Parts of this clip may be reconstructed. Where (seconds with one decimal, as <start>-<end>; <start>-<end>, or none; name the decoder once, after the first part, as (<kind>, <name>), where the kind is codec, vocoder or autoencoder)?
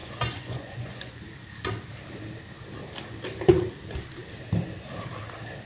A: 0.0-1.2 (vocoder, Vocos)